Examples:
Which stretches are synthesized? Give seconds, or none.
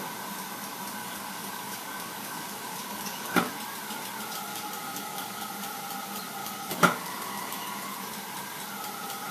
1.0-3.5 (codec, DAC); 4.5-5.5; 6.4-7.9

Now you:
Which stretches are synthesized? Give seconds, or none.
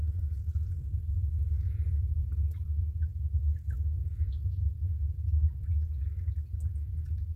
1.0-2.3 (vocoder, Vocos)